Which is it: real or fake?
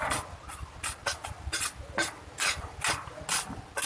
real